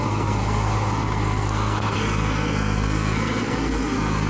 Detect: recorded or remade remade